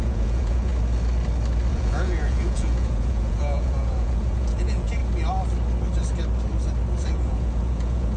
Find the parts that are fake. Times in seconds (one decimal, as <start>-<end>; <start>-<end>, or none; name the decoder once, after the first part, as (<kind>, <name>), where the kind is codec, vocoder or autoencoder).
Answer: 0.0-0.7 (vocoder, Vocos); 1.7-5.0; 7.0-8.2